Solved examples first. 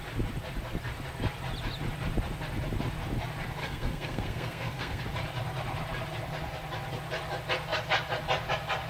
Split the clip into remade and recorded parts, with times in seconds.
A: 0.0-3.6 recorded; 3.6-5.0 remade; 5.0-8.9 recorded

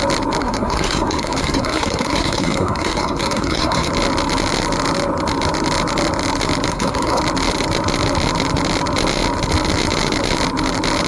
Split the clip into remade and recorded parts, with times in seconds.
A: 0.0-0.4 recorded; 0.4-3.9 remade; 3.9-6.7 recorded; 6.7-7.2 remade; 7.2-11.1 recorded

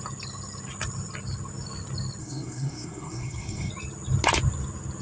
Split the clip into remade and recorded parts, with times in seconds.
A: 0.0-2.2 recorded; 2.2-3.7 remade; 3.7-5.0 recorded

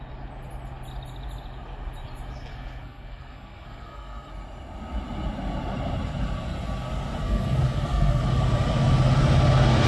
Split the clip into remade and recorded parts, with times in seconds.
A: 0.0-2.5 recorded; 2.5-4.3 remade; 4.3-7.2 recorded; 7.2-8.2 remade; 8.2-9.9 recorded

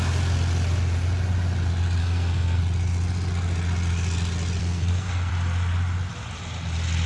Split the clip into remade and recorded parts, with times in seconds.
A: 0.0-2.0 recorded; 2.0-2.6 remade; 2.6-4.6 recorded; 4.6-5.3 remade; 5.3-7.1 recorded

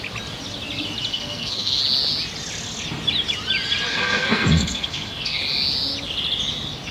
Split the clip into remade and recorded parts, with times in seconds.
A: 0.0-1.1 recorded; 1.1-1.8 remade; 1.8-3.9 recorded; 3.9-5.4 remade; 5.4-6.9 recorded